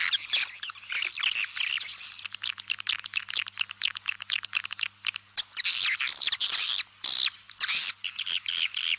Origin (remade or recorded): recorded